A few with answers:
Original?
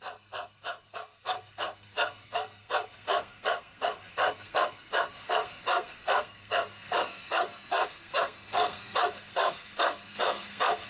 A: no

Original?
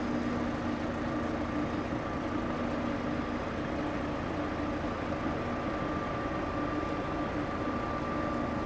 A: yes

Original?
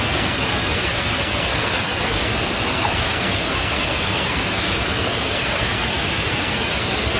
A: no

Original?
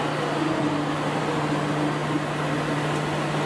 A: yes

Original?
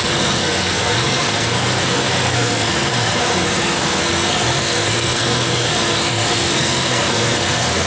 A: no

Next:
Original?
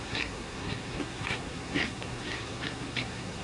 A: no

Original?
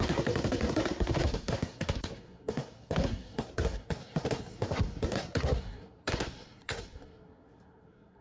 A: no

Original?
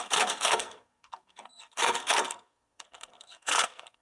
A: no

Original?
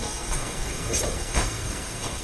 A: no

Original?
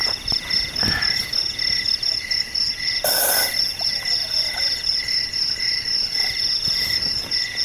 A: yes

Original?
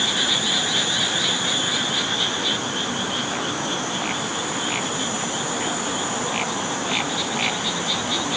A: yes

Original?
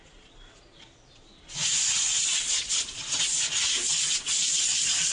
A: yes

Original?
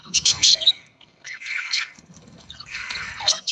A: no